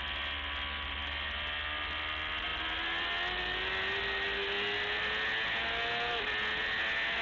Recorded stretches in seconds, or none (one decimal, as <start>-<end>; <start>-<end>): 0.0-7.2

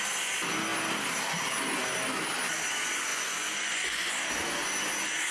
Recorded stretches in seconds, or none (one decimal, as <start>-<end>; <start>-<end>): 0.0-3.1; 4.1-5.3

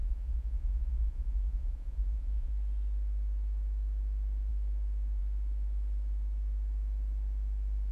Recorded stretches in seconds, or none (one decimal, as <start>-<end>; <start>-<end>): 2.5-7.9

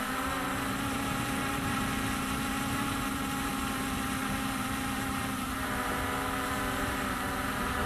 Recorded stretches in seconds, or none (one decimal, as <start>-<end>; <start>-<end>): 3.5-4.2

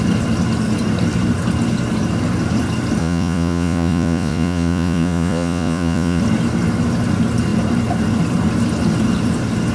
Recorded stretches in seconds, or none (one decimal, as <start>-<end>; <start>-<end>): 0.0-3.0; 6.2-9.7